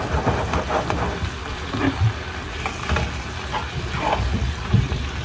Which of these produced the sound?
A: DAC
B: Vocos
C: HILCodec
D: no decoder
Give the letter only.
D